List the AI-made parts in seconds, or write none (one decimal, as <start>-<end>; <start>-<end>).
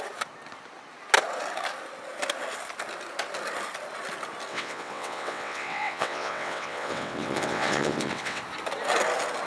4.5-8.4